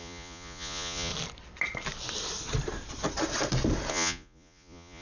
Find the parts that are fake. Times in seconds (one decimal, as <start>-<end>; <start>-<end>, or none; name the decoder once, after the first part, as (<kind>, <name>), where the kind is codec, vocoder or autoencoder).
0.0-1.1 (vocoder, Vocos); 3.9-5.0